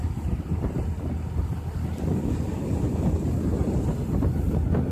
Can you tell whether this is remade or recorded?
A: recorded